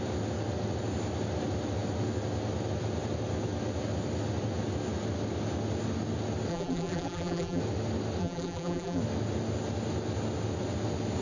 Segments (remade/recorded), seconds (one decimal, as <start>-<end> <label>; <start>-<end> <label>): 0.0-6.5 recorded; 6.5-7.6 remade; 7.6-8.2 recorded; 8.2-9.0 remade; 9.0-11.2 recorded